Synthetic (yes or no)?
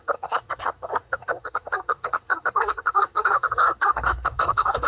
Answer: yes